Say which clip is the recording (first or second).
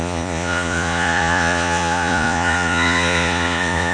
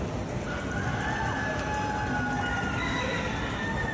second